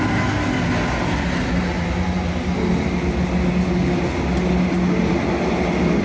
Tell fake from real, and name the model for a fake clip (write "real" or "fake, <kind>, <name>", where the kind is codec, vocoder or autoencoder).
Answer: real